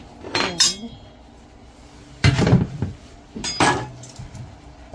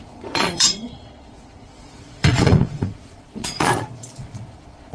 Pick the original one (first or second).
first